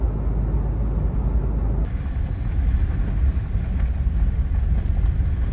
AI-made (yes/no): no